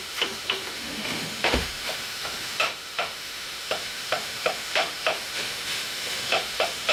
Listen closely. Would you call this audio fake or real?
fake